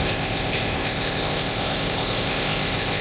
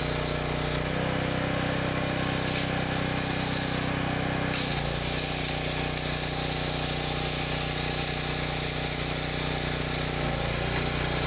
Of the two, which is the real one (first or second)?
second